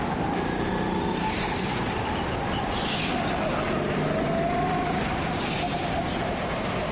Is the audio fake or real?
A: fake